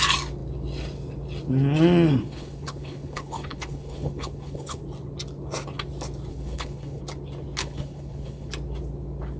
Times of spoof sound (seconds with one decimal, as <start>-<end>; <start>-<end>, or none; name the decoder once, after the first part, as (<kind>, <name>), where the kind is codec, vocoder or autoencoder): 2.2-4.8 (codec, HILCodec); 6.3-7.0; 7.6-8.5